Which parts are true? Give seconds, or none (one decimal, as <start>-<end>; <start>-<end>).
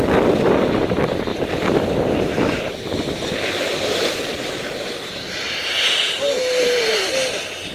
0.0-4.3; 7.1-7.7